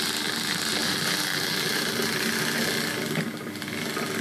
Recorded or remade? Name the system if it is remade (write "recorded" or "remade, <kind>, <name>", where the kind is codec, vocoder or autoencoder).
recorded